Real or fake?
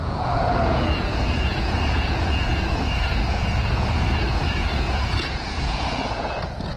fake